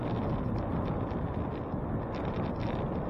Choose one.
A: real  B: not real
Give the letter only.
A